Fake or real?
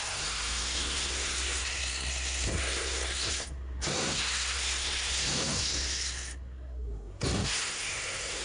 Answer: fake